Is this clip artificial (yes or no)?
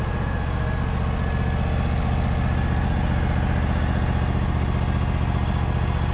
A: no